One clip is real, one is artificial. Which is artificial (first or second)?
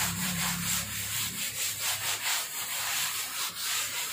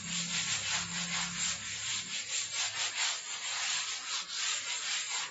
first